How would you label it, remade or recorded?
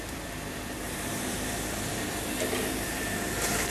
remade